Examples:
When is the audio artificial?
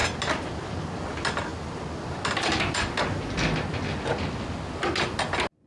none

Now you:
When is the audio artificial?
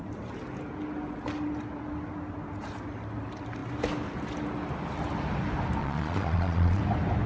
5.8-6.8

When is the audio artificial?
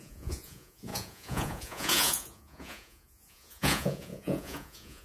0.0-5.0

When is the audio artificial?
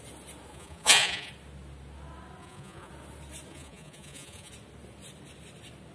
0.5-1.3; 2.4-2.9; 3.5-4.5